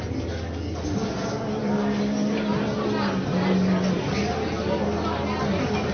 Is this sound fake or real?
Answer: real